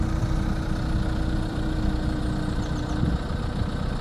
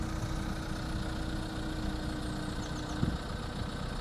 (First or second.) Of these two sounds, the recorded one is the second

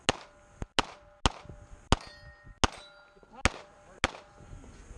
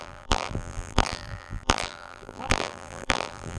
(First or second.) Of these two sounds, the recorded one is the first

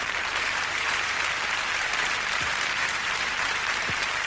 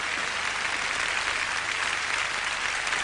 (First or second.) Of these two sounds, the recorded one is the second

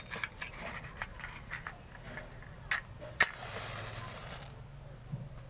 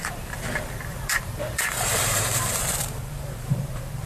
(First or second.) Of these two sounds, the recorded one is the first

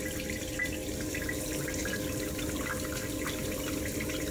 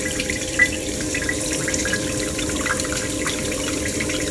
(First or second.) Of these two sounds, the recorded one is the first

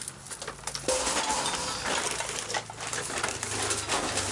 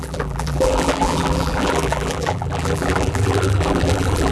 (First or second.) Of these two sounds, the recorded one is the first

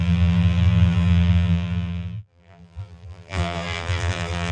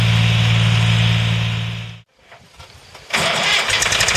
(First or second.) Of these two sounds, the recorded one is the second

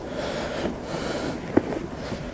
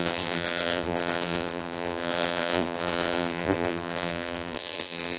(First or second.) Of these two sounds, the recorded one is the first